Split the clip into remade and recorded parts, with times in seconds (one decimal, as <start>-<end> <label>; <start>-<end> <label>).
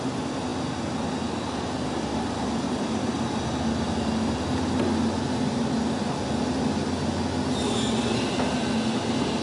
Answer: 0.0-9.4 recorded